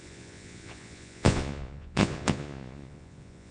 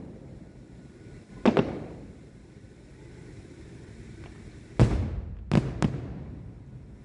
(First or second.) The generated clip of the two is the first